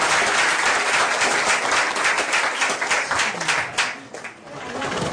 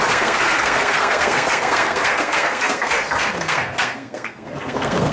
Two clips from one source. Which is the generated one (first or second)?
second